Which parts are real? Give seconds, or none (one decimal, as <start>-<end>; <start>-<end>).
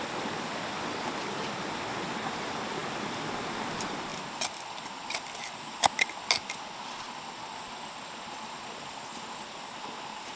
0.0-10.4